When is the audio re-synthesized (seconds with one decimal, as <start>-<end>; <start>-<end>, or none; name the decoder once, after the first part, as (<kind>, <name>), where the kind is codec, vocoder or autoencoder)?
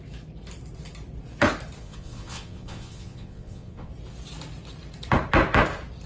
1.8-3.9 (vocoder, Vocos)